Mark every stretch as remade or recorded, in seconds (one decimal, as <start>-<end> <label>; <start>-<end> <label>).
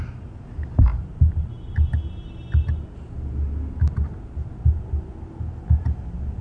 0.0-1.1 recorded; 1.1-1.7 remade; 1.7-6.4 recorded